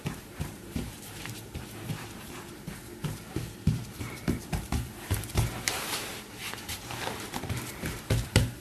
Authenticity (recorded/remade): remade